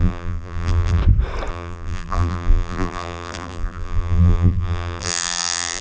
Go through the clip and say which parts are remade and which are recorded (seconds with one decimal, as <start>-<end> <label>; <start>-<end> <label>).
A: 0.0-1.0 remade; 1.0-1.5 recorded; 1.5-5.8 remade